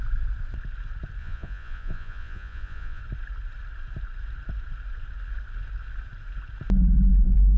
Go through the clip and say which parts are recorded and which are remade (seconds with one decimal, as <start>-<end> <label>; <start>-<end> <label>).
0.0-1.2 recorded; 1.2-3.0 remade; 3.0-7.6 recorded